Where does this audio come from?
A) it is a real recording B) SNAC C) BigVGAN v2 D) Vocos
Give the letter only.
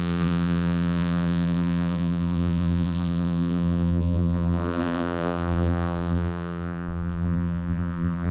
C